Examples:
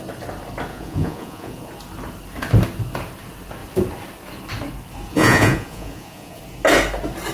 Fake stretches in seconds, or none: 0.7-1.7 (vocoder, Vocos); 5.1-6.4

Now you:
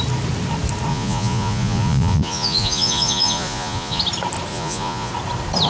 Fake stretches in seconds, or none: 0.9-4.0 (vocoder, Vocos); 4.5-5.1

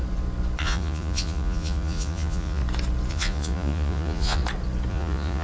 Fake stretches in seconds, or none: 0.6-2.6 (vocoder, Vocos); 3.1-4.4; 4.9-5.4

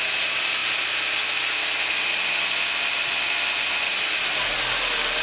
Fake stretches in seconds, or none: none

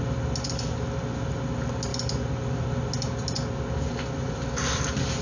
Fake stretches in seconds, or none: none